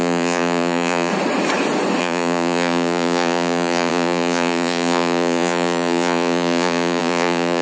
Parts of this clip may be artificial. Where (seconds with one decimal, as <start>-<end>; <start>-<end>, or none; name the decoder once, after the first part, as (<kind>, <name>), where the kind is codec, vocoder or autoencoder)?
0.0-1.1 (vocoder, Vocos); 2.0-7.6